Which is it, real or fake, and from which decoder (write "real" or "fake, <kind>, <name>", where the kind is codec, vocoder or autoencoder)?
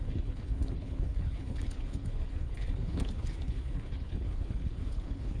fake, codec, HILCodec